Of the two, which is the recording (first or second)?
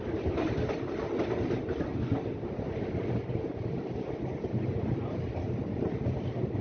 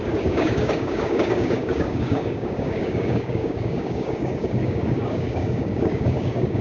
first